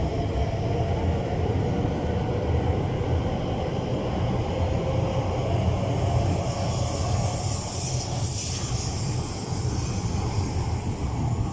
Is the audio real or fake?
real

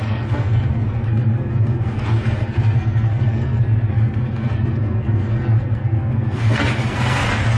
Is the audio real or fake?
fake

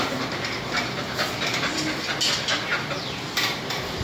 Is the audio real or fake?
real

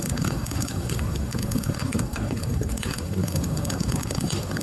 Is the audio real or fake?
fake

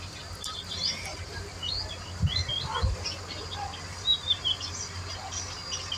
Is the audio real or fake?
real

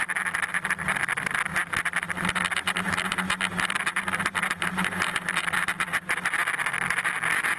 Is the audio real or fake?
real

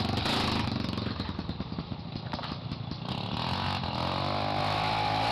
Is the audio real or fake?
real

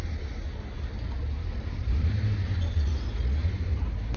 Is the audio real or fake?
real